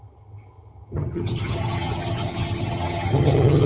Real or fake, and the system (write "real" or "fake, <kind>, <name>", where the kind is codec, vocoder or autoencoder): fake, vocoder, HiFi-GAN